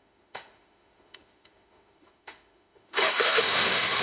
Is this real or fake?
fake